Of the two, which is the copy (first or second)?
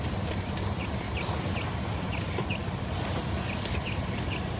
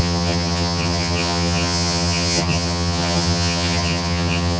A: second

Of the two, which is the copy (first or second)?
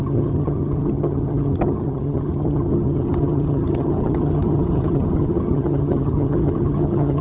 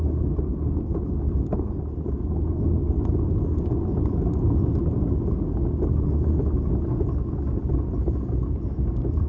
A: first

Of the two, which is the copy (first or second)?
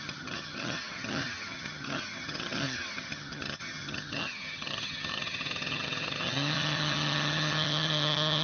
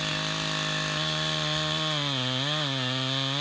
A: first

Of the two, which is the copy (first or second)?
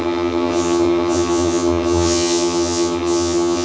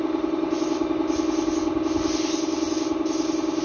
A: first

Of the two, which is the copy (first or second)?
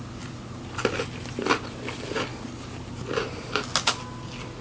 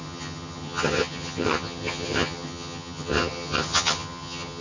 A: second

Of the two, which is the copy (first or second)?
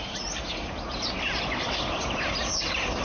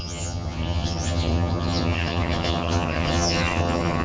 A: second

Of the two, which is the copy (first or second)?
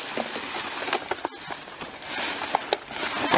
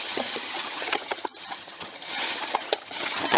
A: second